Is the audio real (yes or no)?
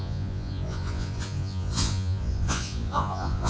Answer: no